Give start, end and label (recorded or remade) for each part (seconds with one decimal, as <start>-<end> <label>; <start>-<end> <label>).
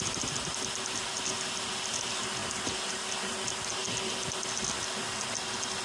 0.0-5.8 recorded